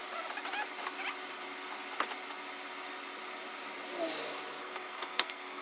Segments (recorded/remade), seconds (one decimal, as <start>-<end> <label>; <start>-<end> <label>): 0.0-4.6 recorded; 4.6-5.6 remade